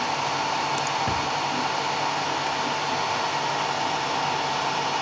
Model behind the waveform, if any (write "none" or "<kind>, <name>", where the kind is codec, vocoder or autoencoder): none